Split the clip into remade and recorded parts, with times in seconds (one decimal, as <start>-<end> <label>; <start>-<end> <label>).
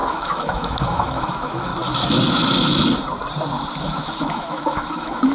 0.0-1.7 remade; 1.7-3.8 recorded; 3.8-5.3 remade